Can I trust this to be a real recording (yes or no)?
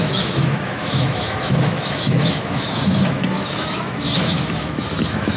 no